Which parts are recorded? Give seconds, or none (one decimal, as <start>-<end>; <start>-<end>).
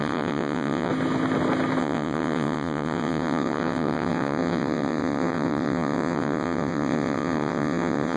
0.9-1.8